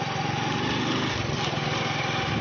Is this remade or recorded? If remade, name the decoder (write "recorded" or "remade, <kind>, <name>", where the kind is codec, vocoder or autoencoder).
recorded